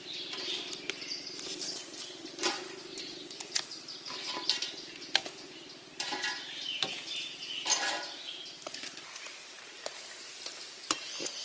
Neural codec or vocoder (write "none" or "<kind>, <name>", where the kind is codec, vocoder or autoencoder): none